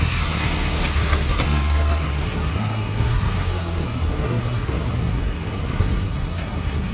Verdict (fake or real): fake